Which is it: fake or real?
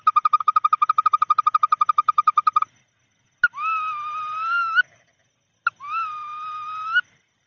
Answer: real